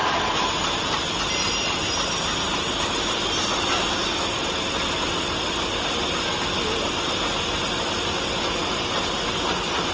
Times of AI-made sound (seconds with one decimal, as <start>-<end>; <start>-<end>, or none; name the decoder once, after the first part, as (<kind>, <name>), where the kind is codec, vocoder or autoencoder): none